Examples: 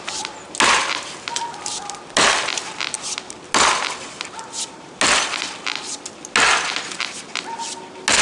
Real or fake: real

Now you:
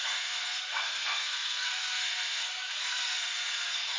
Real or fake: fake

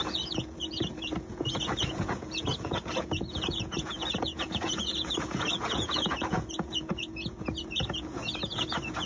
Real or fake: fake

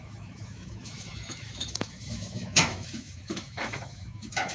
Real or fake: fake